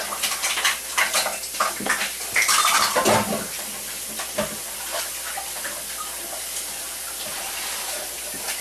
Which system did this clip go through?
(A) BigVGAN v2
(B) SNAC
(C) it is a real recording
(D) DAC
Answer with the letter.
C